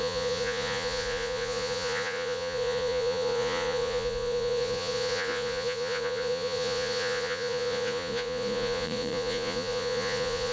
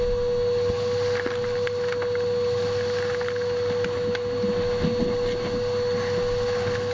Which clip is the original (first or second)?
second